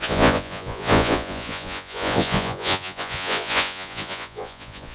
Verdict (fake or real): fake